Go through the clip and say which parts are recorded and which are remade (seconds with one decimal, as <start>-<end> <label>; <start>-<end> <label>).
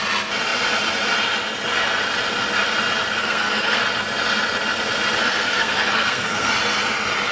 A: 0.0-3.2 recorded; 3.2-3.8 remade; 3.8-5.2 recorded; 5.2-6.5 remade; 6.5-7.3 recorded